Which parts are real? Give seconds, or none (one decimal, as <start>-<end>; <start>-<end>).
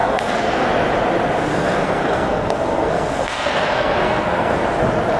0.7-1.5; 4.6-5.2